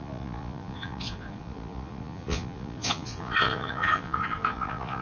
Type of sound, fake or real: fake